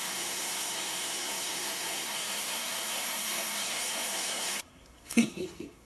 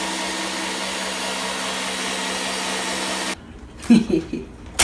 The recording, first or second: second